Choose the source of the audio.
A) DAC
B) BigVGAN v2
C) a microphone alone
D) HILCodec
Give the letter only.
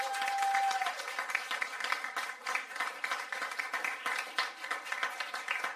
C